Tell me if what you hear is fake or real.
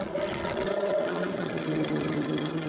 fake